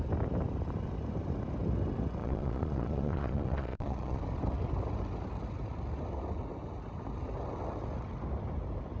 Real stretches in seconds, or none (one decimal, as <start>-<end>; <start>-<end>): 0.0-2.2; 4.2-9.0